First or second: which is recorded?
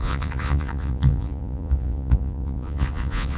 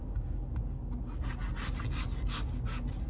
second